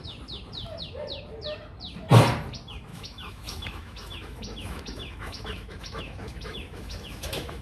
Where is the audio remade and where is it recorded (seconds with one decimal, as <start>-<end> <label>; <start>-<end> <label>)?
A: 0.0-2.9 recorded; 2.9-7.6 remade